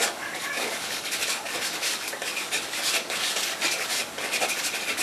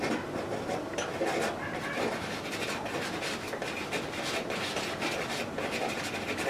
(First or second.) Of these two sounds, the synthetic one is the first